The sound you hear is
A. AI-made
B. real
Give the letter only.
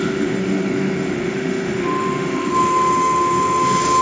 A